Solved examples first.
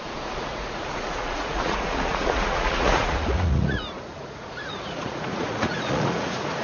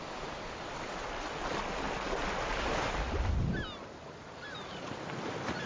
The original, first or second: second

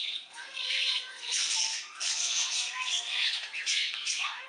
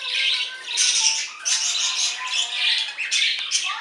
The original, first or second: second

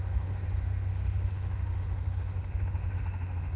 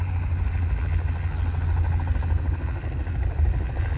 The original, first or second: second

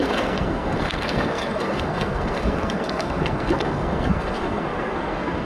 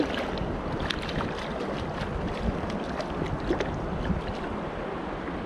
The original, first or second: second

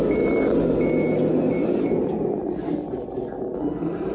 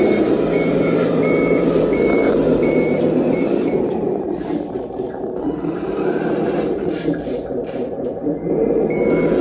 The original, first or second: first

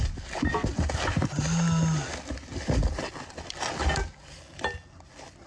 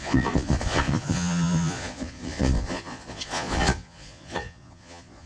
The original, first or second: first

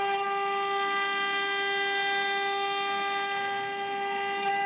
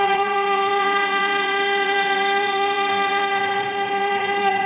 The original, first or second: first